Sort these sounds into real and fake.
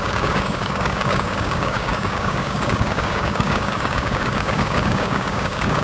fake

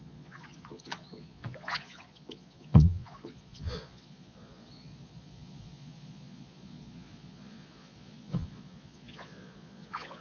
fake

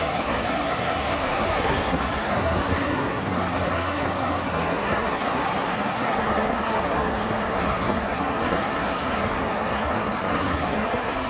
fake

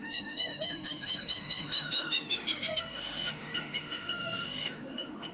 fake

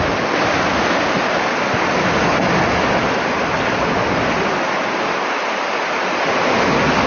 real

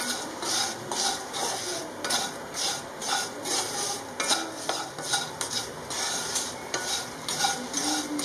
real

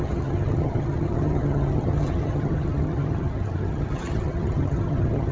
fake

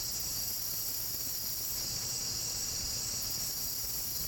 fake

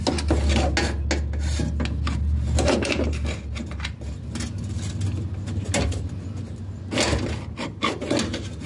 real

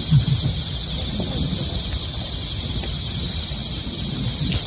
real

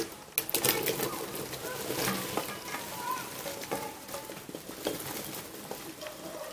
real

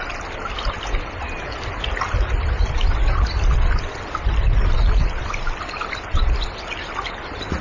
real